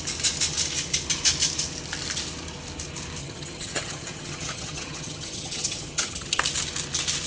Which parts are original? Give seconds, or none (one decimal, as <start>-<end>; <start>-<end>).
0.0-3.2; 6.4-7.3